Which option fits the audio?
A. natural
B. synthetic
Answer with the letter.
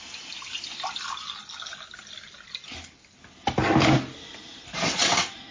A